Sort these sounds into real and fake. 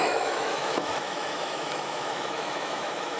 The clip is fake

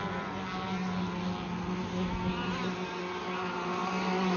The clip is real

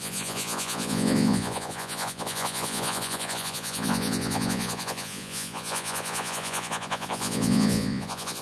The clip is fake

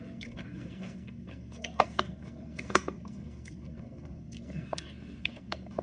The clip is fake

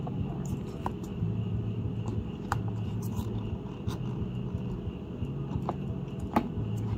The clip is fake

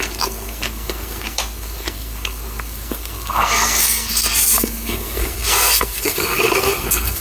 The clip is fake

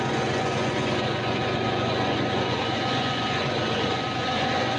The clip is fake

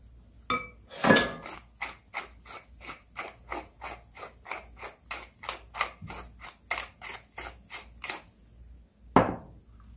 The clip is real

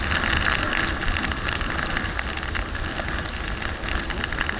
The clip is real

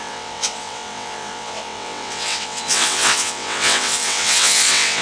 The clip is fake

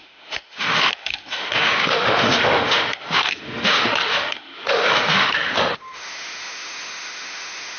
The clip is fake